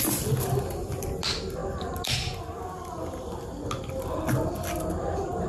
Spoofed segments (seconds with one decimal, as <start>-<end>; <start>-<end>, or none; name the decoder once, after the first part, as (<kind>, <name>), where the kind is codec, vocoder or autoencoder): none